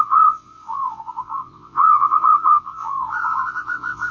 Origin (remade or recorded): remade